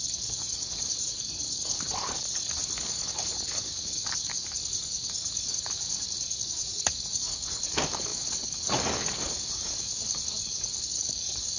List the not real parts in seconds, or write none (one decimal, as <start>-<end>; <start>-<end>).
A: 0.0-11.6